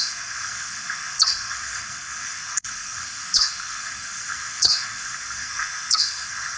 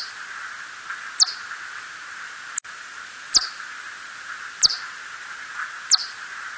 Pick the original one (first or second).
second